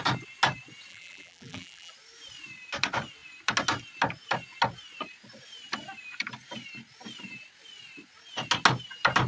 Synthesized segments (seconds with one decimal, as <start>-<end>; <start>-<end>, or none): 0.9-1.9